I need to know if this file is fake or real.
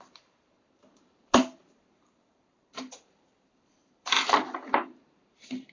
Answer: fake